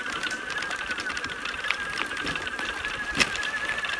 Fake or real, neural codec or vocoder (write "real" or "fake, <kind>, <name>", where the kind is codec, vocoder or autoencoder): real